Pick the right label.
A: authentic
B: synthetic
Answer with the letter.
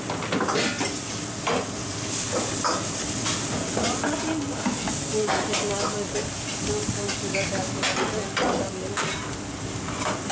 A